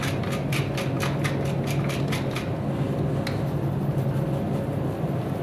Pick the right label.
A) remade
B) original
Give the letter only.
B